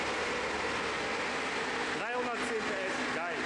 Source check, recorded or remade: recorded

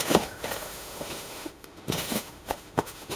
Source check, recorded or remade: remade